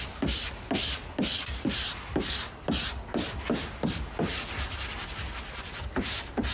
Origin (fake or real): real